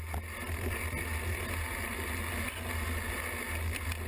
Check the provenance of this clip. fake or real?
real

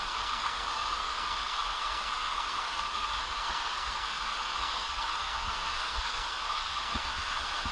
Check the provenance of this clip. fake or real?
fake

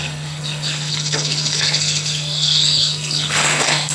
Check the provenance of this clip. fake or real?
fake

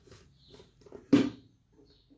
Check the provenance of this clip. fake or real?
real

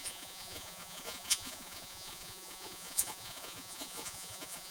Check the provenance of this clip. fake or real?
fake